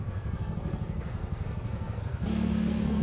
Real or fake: fake